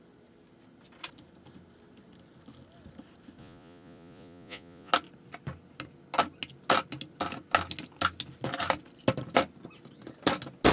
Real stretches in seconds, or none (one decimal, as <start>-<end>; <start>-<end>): 0.0-3.4; 4.9-10.7